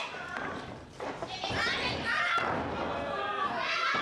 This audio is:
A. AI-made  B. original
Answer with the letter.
B